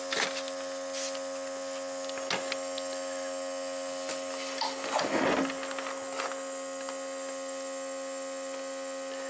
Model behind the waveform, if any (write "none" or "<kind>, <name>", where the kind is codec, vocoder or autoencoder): none